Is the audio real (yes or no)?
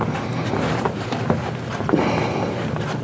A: yes